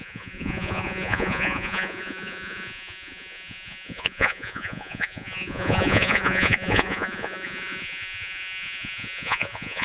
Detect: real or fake fake